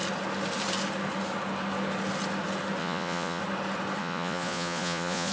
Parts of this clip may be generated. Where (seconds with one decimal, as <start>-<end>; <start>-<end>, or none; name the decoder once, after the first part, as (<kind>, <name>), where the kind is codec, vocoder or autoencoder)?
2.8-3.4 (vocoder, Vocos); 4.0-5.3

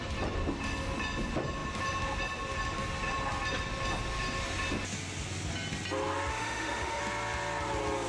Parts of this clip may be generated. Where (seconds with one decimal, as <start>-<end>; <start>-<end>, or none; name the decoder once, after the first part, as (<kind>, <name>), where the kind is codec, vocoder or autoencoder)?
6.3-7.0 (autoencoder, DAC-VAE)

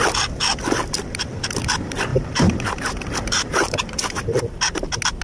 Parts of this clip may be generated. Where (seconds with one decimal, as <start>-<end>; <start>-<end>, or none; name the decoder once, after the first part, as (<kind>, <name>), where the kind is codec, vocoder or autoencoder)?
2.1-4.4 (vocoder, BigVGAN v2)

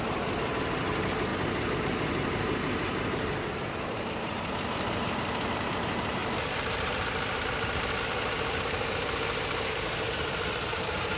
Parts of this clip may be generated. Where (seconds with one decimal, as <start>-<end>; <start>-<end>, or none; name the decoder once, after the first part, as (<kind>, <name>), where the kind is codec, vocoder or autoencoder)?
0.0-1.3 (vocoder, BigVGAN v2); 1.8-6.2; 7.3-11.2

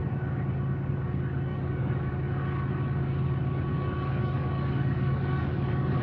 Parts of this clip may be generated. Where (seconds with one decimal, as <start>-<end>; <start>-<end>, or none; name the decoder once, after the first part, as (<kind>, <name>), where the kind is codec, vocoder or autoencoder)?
1.5-2.1 (codec, DAC); 3.7-6.0

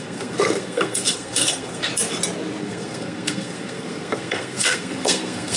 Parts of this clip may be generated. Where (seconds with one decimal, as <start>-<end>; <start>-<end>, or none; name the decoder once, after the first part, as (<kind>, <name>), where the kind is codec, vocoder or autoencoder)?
0.0-1.9 (codec, SNAC); 2.6-5.6

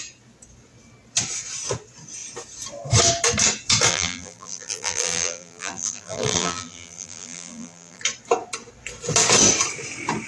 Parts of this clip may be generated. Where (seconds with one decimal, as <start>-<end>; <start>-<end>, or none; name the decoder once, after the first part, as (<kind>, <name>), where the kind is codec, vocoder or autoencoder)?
3.9-8.0 (vocoder, BigVGAN v2)